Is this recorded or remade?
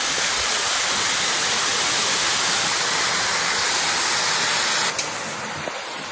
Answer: recorded